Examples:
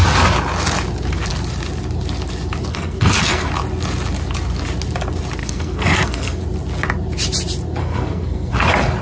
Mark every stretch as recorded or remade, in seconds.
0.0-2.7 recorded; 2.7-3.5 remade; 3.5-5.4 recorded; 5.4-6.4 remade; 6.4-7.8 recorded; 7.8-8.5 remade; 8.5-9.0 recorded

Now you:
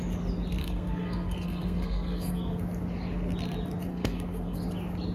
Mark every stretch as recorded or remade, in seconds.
0.0-0.6 recorded; 0.6-2.6 remade; 2.6-3.9 recorded; 3.9-4.6 remade; 4.6-5.1 recorded

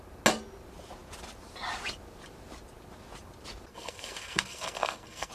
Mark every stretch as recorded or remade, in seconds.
0.0-3.7 recorded; 3.7-5.3 remade